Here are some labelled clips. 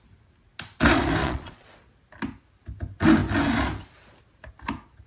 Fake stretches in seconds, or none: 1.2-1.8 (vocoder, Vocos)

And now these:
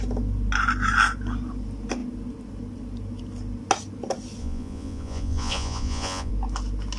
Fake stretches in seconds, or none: 4.4-6.3 (vocoder, Vocos)